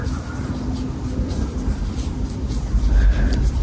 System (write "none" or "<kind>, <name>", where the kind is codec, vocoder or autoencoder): vocoder, BigVGAN v2